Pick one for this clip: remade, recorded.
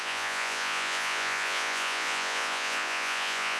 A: remade